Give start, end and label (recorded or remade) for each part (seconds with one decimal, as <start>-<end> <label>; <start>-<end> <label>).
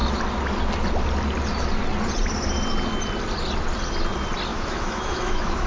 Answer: 0.0-4.5 recorded; 4.5-5.7 remade